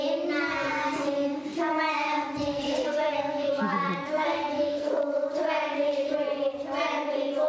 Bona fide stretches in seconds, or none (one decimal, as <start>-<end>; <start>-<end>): 0.0-2.5; 3.5-4.0; 5.0-7.5